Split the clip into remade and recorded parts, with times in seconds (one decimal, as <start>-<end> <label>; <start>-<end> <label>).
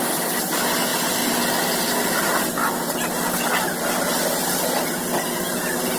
0.0-6.0 recorded